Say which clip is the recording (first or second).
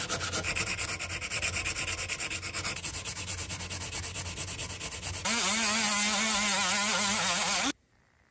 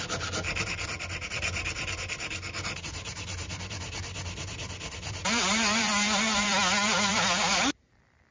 first